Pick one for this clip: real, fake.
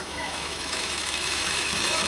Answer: fake